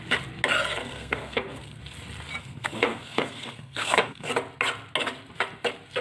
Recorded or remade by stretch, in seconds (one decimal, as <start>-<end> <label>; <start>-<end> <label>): 0.0-0.8 recorded; 0.8-1.8 remade; 1.8-2.4 recorded; 2.4-4.3 remade; 4.3-6.0 recorded